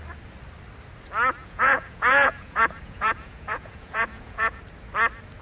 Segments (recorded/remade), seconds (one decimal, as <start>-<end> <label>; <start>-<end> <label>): 0.0-1.4 recorded; 1.4-4.6 remade; 4.6-5.4 recorded